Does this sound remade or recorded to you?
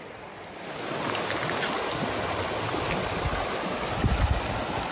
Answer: recorded